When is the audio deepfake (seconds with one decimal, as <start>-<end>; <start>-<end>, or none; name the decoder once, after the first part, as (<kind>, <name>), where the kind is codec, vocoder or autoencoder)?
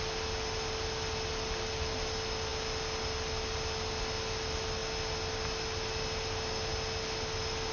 none